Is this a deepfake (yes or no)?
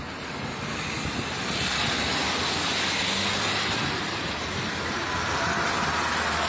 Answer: no